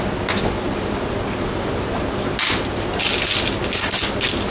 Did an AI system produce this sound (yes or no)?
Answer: no